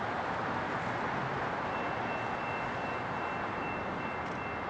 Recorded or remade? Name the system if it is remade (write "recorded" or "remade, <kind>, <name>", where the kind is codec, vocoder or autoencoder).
recorded